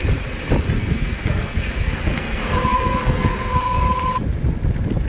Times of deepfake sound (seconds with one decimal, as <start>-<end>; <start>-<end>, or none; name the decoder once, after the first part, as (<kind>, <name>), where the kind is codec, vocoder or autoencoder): 0.8-3.9 (codec, SNAC)